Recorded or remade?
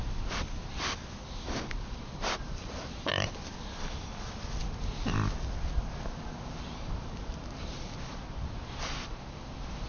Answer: recorded